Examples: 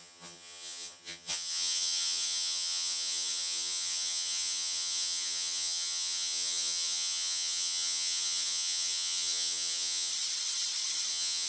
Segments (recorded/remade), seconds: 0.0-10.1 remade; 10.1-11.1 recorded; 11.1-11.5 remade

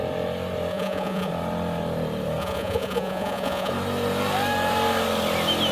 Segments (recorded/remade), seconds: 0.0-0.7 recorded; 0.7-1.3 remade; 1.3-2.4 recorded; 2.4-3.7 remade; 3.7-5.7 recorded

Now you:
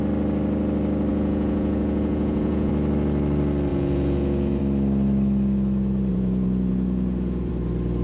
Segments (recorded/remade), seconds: 0.0-1.1 recorded; 1.1-2.7 remade; 2.7-3.7 recorded; 3.7-4.6 remade; 4.6-6.1 recorded; 6.1-7.5 remade; 7.5-8.0 recorded

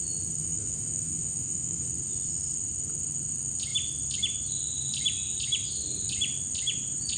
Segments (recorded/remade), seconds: 0.0-0.4 recorded; 0.4-1.9 remade; 1.9-7.2 recorded

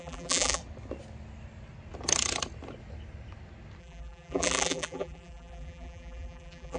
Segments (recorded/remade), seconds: 0.0-0.6 remade; 0.6-3.8 recorded; 3.8-6.8 remade

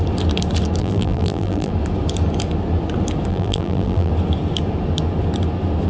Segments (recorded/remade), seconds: 0.0-0.8 recorded; 0.8-1.7 remade; 1.7-3.3 recorded; 3.3-4.1 remade; 4.1-5.9 recorded

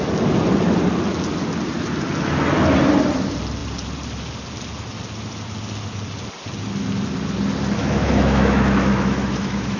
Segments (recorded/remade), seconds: 0.0-7.8 recorded; 7.8-9.8 remade

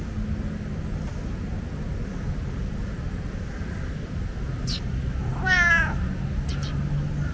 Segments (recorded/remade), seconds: 0.0-2.1 recorded; 2.1-6.5 remade; 6.5-7.3 recorded